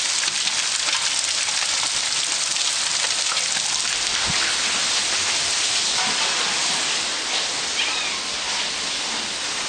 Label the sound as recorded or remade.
recorded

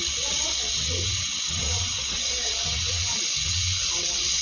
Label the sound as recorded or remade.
remade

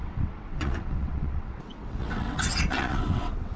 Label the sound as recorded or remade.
remade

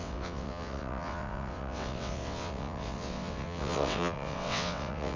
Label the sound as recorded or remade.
remade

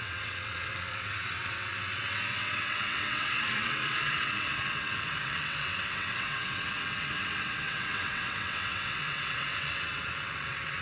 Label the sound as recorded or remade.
remade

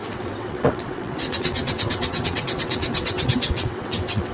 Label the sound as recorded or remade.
remade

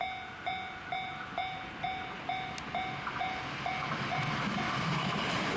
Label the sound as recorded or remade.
recorded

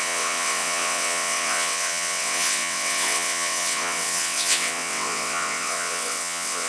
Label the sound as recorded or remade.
remade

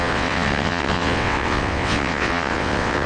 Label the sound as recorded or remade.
remade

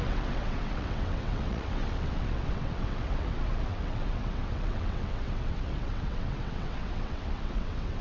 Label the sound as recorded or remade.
remade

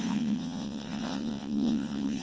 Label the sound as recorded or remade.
remade